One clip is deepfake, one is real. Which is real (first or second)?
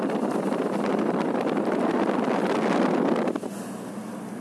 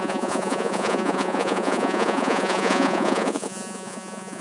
first